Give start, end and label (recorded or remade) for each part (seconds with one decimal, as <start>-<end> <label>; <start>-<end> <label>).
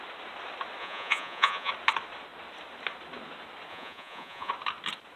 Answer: 0.0-0.8 recorded; 0.8-1.7 remade; 1.7-3.7 recorded; 3.7-4.5 remade; 4.5-5.2 recorded